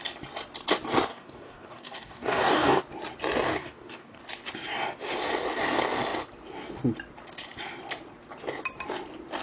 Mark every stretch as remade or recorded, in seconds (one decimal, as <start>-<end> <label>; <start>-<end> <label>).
0.0-1.1 recorded; 1.1-2.8 remade; 2.8-3.5 recorded; 3.5-4.2 remade; 4.2-9.4 recorded